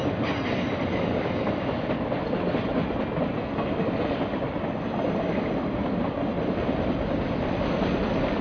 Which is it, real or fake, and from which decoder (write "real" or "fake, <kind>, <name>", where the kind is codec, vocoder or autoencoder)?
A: real